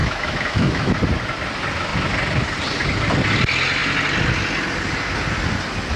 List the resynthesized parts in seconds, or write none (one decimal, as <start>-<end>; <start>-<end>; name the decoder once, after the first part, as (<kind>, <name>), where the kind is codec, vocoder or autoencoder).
0.0-0.9 (autoencoder, DAC-VAE)